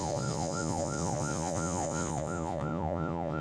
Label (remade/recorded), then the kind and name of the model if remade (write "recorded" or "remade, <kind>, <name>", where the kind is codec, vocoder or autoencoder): remade, vocoder, Vocos